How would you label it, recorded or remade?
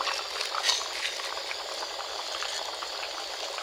recorded